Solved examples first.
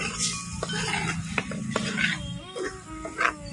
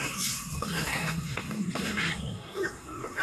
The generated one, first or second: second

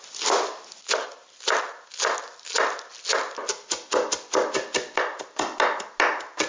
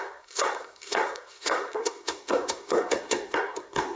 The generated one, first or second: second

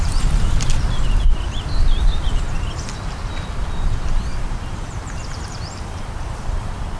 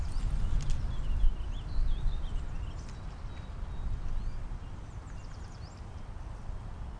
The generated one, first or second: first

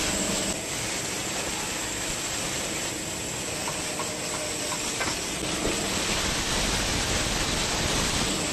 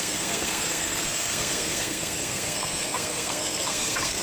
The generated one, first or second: second